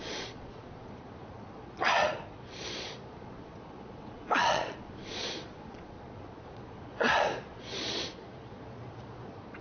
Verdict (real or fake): fake